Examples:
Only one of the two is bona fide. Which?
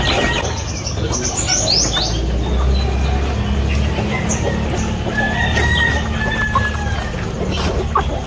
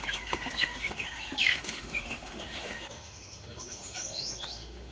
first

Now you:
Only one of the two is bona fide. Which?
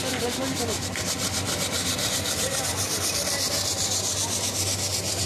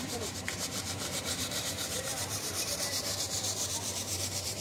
first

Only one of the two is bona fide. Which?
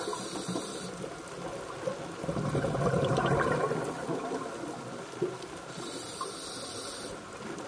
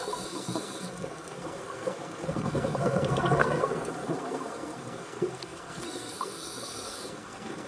first